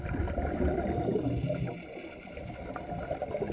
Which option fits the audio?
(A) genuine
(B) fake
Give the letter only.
A